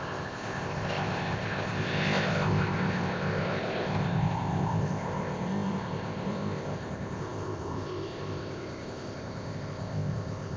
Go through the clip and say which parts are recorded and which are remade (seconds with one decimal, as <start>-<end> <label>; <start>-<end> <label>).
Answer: 0.0-10.6 remade